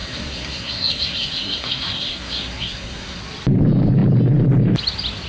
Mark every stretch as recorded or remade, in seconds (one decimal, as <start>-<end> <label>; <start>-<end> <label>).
0.0-3.2 remade; 3.2-5.3 recorded